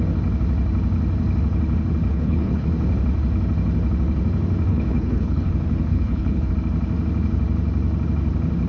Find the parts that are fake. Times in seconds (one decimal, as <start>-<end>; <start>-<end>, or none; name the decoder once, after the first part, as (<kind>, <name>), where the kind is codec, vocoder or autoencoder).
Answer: 2.1-2.7 (codec, HILCodec); 4.7-5.5; 5.9-6.5